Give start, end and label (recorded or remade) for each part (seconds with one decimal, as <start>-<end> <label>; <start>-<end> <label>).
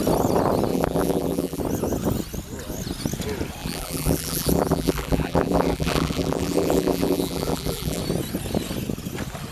0.0-0.7 recorded; 0.7-1.6 remade; 1.6-3.6 recorded; 3.6-8.0 remade; 8.0-9.5 recorded